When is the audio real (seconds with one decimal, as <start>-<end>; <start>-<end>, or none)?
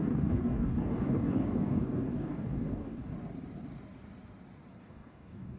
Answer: 3.1-4.8